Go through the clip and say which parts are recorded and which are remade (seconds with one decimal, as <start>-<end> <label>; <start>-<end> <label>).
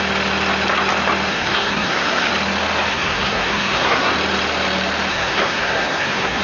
0.0-1.3 recorded; 1.3-2.3 remade; 2.3-2.9 recorded; 2.9-4.1 remade; 4.1-5.1 recorded; 5.1-6.4 remade